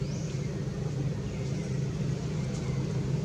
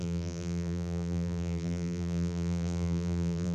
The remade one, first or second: second